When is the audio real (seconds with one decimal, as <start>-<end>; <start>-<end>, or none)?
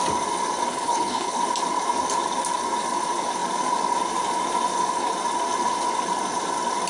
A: 0.0-0.7; 1.4-6.9